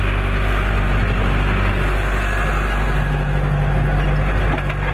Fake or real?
real